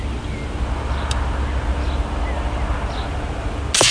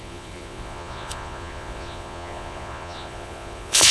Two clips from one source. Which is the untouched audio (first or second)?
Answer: first